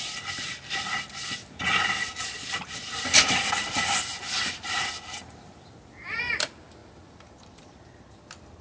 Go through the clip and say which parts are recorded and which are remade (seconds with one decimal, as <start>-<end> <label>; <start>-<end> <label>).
0.0-8.6 recorded